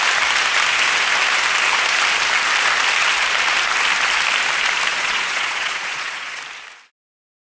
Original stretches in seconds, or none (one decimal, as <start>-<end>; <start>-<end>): 0.0-4.9; 6.4-7.5

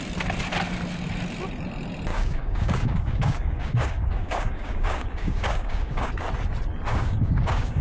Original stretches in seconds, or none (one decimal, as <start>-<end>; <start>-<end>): 0.0-2.1; 6.1-6.9

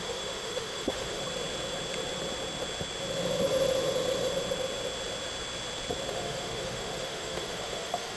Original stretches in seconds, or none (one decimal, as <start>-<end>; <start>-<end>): 1.2-6.1

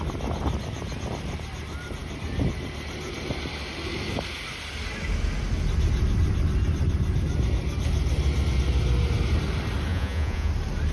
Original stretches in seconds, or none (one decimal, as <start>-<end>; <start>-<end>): 0.0-9.9; 10.5-10.9

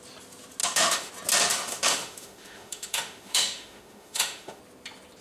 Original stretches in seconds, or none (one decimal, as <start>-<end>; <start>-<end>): 0.0-0.6; 1.1-1.5; 4.6-5.2

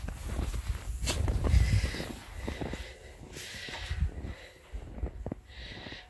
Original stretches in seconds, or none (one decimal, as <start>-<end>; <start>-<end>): 0.0-6.1

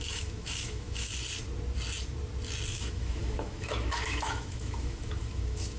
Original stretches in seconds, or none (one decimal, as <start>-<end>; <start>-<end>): 1.1-2.7